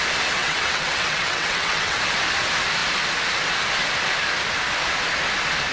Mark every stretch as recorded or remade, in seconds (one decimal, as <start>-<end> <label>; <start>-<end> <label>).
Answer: 0.0-0.4 recorded; 0.4-2.0 remade; 2.0-5.7 recorded